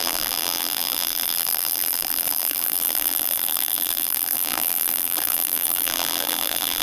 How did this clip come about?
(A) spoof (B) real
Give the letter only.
A